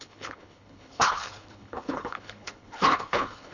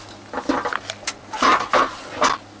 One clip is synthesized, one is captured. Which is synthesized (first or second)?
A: first